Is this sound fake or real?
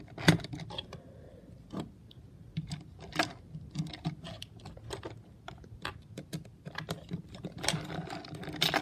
real